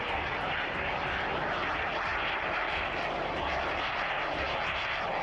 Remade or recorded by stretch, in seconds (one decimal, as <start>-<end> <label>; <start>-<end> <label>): 0.0-5.2 recorded